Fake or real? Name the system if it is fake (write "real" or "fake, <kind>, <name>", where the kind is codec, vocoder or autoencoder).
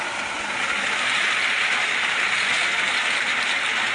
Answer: real